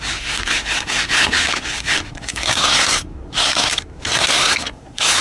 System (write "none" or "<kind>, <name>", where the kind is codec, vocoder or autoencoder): codec, SNAC